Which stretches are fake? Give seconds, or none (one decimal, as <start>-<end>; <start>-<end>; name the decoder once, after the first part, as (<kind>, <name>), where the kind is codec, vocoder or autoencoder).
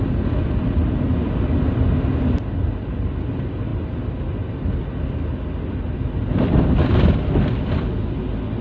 none